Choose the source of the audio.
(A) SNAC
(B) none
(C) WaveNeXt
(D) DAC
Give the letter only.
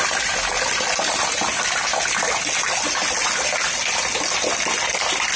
B